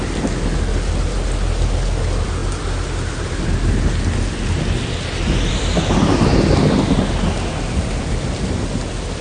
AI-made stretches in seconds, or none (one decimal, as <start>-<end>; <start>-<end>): none